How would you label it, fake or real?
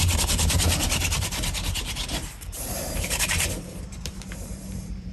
fake